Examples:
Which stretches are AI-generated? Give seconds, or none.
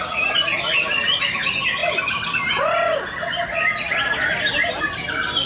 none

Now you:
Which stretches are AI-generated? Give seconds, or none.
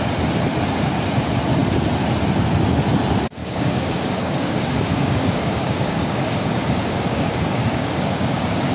3.4-8.7 (codec, DAC)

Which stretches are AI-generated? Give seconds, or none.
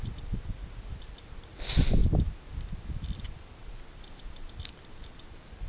none